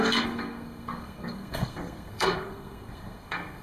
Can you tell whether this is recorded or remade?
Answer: remade